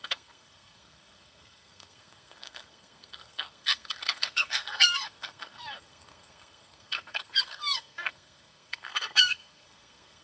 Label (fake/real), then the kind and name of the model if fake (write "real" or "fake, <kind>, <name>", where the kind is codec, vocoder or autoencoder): fake, codec, SNAC